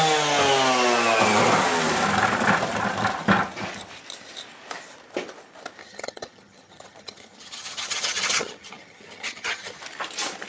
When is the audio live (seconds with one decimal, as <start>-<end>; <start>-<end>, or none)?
0.0-5.8; 9.8-10.5

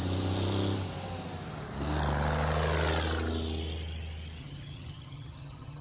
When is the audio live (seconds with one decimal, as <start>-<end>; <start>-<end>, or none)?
0.0-4.4

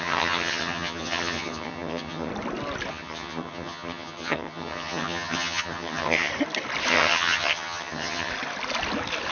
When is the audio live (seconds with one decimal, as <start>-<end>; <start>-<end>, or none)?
2.3-2.9; 6.3-6.9; 8.3-9.3

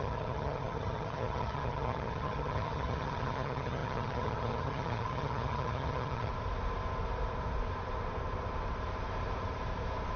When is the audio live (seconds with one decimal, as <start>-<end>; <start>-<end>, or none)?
6.3-10.2

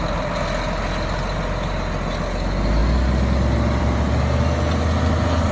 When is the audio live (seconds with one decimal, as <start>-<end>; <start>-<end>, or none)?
0.0-5.5